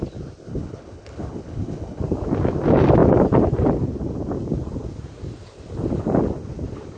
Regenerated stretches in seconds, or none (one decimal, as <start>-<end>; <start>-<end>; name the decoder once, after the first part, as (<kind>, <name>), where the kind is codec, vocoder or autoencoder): 0.5-2.0 (codec, HILCodec)